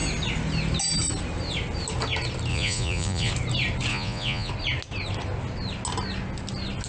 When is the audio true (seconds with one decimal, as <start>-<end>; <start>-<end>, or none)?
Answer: 0.0-2.5; 3.3-3.9; 4.5-6.9